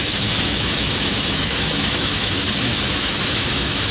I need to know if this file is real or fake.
fake